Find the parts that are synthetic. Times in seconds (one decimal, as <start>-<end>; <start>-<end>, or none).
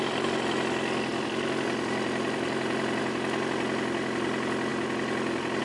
1.1-3.0